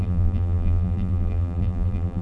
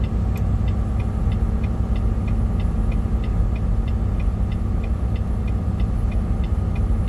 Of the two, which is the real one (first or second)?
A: second